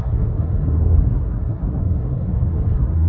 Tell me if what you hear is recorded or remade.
remade